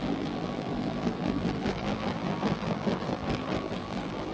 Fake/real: fake